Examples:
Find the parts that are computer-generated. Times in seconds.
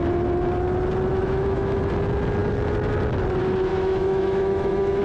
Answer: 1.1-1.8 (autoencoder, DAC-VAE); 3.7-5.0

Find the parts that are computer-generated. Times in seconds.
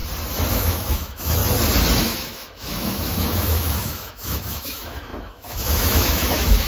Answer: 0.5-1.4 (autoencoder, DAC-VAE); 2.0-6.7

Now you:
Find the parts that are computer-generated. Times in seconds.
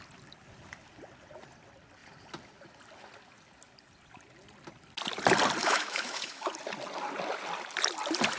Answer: 5.6-6.5 (autoencoder, DAC-VAE)